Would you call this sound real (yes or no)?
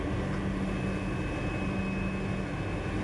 yes